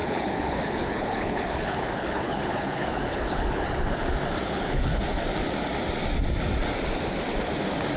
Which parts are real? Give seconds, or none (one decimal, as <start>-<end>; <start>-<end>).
4.0-4.4; 5.0-8.0